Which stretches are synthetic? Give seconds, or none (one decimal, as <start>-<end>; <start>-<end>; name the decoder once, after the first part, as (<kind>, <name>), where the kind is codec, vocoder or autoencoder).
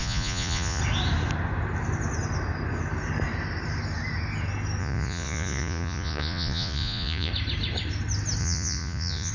0.0-0.8 (vocoder, Vocos); 4.8-7.3; 8.4-9.3